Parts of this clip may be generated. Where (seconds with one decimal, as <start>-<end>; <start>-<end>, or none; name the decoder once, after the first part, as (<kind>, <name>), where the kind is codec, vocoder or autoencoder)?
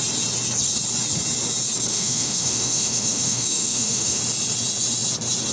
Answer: 1.9-4.2 (autoencoder, DAC-VAE)